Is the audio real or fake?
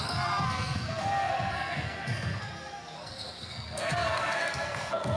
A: fake